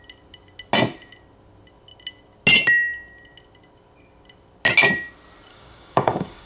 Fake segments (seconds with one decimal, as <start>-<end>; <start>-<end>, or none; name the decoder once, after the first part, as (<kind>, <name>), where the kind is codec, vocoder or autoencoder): 5.5-6.5 (codec, DAC)